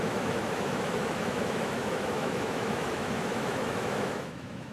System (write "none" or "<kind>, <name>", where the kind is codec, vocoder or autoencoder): autoencoder, DAC-VAE